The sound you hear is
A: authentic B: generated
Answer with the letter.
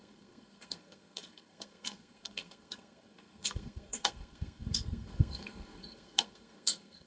B